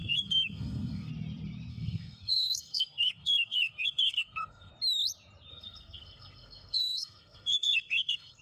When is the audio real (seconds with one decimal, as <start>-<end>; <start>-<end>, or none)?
1.1-1.7; 4.7-5.5

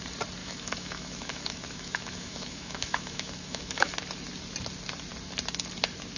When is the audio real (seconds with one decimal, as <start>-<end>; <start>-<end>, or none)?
0.0-0.4; 3.9-6.2